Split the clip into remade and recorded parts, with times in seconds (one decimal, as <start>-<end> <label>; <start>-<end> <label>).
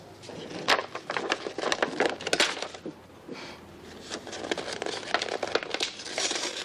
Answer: 0.0-5.7 recorded; 5.7-6.6 remade